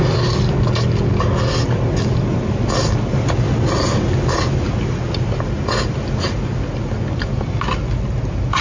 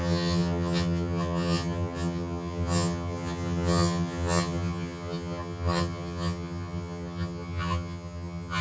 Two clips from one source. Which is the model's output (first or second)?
second